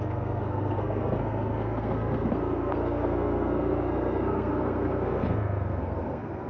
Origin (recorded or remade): remade